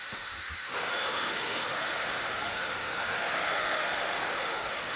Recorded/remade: remade